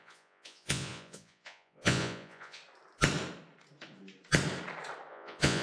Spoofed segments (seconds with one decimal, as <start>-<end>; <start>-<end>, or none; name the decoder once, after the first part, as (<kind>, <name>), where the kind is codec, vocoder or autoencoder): 0.0-2.6 (vocoder, Vocos); 5.1-5.6